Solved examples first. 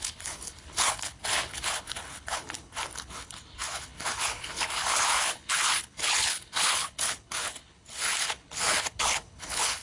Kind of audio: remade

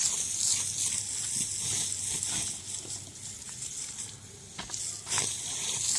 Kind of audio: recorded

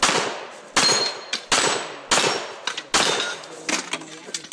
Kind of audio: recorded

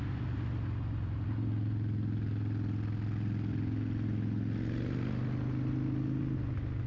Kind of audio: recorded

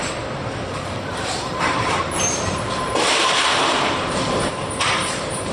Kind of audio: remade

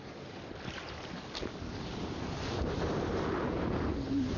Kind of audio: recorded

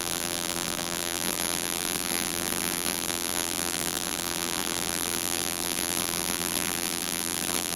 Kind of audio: remade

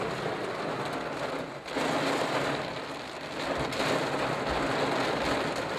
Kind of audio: recorded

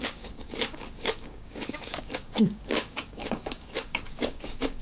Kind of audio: remade